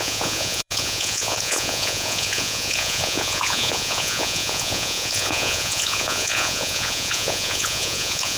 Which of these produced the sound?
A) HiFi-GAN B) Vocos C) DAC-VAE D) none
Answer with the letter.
B